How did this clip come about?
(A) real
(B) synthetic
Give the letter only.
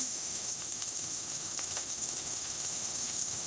B